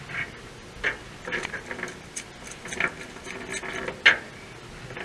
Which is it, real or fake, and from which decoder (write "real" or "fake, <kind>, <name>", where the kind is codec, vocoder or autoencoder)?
real